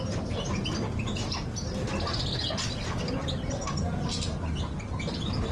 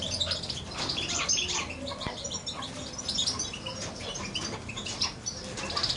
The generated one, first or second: second